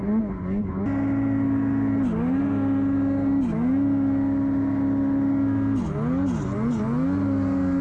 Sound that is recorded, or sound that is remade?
recorded